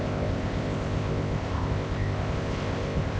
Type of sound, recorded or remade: remade